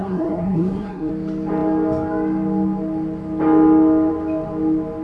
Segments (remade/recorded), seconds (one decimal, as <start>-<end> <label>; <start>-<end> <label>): 0.0-1.1 remade; 1.1-5.0 recorded